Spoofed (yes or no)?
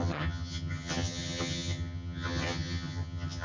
yes